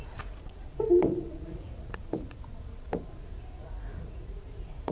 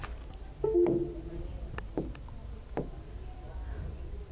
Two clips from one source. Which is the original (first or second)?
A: second